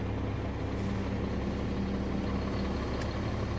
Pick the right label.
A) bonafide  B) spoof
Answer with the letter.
A